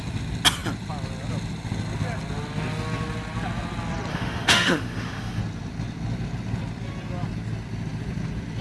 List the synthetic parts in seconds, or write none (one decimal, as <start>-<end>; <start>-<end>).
4.1-5.4